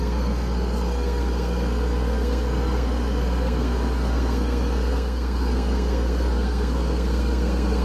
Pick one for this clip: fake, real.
fake